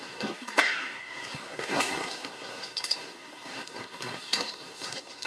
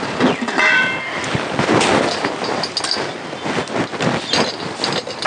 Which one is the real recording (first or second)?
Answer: second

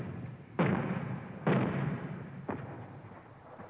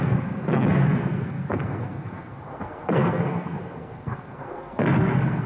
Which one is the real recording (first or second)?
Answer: first